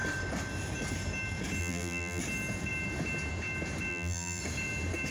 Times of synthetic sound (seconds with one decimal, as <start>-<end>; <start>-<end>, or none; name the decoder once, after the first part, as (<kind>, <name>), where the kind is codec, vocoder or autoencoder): 1.6-2.2 (vocoder, BigVGAN v2); 3.9-4.4